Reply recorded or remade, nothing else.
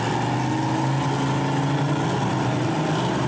recorded